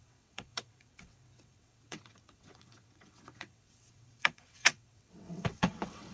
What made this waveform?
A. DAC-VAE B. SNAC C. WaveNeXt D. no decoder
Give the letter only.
C